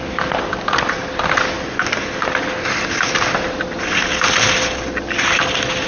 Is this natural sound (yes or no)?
yes